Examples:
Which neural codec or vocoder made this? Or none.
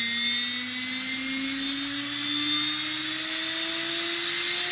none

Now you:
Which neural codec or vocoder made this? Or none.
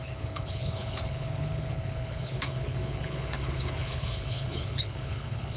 codec, HILCodec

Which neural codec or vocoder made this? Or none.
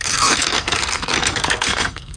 codec, SNAC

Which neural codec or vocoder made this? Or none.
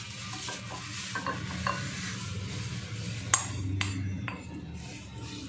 none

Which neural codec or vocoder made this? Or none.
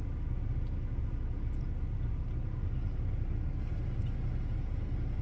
none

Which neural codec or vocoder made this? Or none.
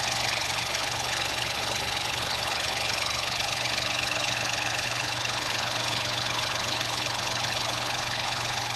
codec, HILCodec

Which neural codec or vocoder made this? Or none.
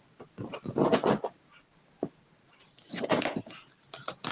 none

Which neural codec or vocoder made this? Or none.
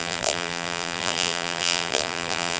vocoder, BigVGAN v2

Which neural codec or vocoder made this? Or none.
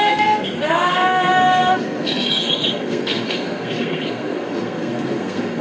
codec, SNAC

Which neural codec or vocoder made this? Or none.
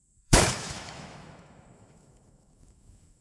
autoencoder, DAC-VAE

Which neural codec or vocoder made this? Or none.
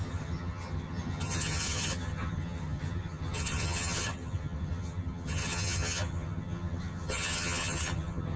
vocoder, HiFi-GAN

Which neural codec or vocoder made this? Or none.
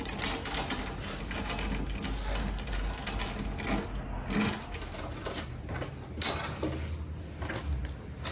none